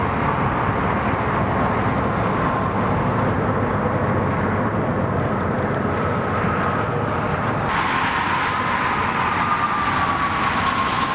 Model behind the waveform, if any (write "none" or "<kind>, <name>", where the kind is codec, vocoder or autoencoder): none